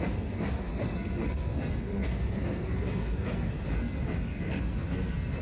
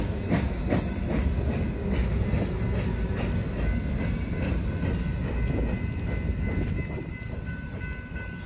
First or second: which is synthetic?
first